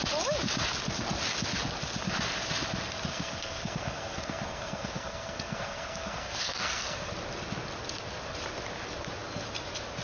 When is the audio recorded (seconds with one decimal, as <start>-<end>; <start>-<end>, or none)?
0.0-3.1; 7.1-10.0